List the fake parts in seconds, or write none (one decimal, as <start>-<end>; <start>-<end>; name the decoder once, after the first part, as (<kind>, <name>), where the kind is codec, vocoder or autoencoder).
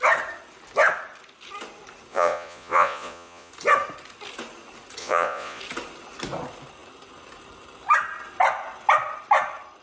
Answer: 2.1-3.5 (vocoder, Vocos); 5.0-5.6